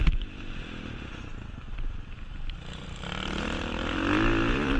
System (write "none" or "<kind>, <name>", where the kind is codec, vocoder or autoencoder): none